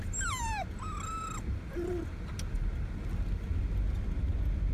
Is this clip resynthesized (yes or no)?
no